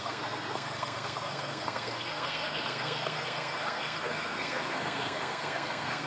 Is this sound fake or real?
fake